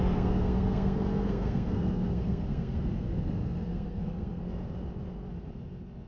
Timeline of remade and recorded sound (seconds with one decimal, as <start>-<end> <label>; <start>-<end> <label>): 0.0-4.4 remade; 4.4-6.1 recorded